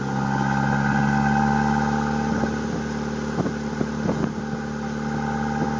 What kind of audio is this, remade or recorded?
recorded